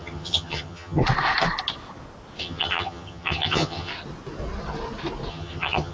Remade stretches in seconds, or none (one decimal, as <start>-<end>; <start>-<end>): 0.0-1.0; 2.4-3.9; 5.3-5.9